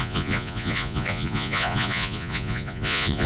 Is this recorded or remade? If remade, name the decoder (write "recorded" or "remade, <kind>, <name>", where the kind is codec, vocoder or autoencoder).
remade, vocoder, Vocos